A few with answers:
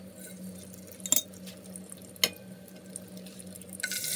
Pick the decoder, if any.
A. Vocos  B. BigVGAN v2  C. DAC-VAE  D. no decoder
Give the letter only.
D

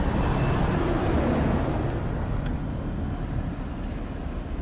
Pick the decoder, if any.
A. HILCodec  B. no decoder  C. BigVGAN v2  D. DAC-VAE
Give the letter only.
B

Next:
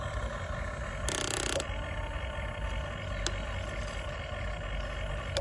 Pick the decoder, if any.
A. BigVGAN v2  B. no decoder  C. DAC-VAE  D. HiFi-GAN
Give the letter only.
B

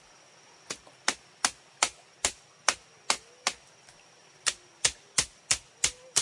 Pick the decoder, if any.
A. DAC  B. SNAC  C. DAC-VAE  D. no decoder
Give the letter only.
D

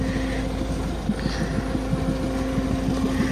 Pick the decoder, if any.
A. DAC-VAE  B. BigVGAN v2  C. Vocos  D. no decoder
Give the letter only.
D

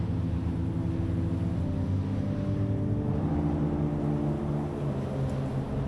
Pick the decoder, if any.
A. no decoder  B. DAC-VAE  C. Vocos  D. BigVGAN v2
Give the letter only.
A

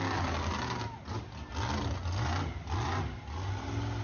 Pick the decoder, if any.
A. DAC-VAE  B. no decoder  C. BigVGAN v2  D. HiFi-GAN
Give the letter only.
B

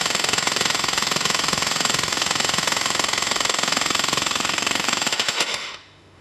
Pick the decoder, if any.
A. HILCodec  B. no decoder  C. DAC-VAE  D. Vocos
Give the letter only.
C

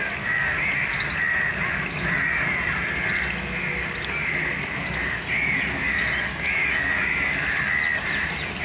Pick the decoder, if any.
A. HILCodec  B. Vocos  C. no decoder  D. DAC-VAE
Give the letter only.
C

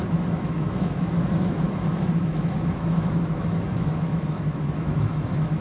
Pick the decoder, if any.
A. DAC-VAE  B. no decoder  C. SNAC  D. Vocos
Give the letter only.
A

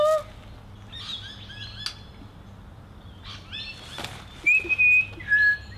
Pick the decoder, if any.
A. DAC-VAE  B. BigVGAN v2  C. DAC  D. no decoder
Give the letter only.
D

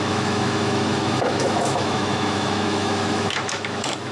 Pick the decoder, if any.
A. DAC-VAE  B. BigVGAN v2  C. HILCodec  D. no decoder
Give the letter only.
A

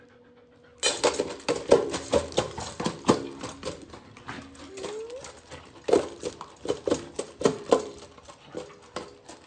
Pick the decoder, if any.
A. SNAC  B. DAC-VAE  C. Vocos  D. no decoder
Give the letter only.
D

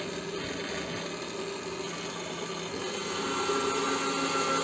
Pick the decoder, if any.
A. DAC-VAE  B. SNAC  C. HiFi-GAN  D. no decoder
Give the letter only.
D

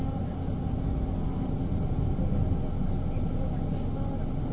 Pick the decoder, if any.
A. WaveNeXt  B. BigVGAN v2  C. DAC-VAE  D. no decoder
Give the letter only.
D